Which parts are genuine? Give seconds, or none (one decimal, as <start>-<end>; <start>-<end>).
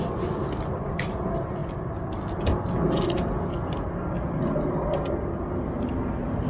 0.0-6.5